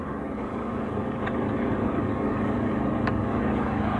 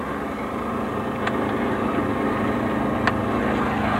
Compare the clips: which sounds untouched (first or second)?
second